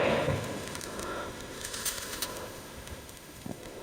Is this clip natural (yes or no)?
no